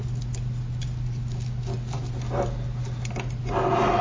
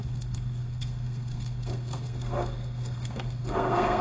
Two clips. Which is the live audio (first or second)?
first